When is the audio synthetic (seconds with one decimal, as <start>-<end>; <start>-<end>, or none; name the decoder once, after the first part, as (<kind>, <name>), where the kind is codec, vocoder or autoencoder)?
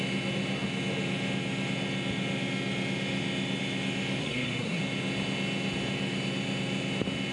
4.2-4.8 (codec, SNAC)